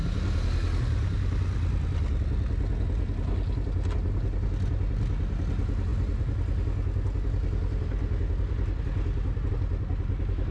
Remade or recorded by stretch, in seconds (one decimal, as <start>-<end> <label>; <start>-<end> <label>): 0.0-10.5 recorded